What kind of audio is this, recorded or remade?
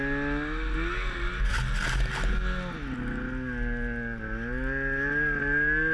recorded